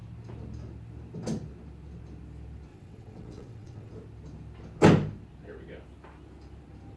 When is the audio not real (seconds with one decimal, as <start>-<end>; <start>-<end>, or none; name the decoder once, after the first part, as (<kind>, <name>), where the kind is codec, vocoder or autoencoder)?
2.7-3.9 (vocoder, WaveNeXt)